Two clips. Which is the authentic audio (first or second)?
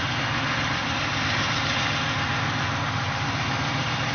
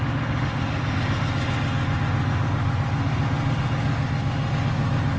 second